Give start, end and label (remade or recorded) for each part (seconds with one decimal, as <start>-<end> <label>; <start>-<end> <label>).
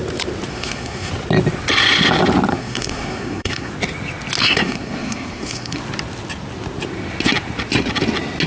0.0-0.5 recorded; 0.5-1.1 remade; 1.1-2.5 recorded; 2.5-3.7 remade; 3.7-4.4 recorded; 4.4-5.8 remade; 5.8-8.5 recorded